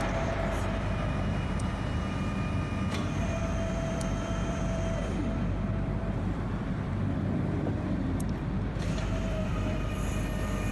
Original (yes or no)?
no